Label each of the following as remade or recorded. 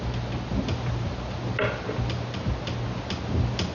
recorded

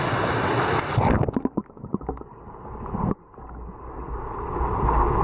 recorded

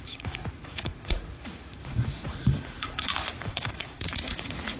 remade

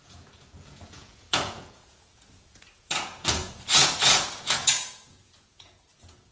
remade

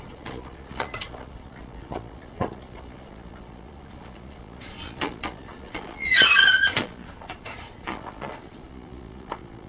remade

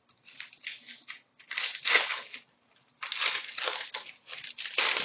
recorded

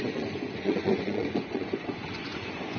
remade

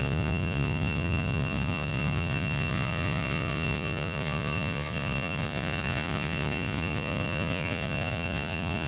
remade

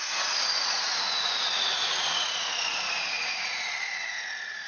remade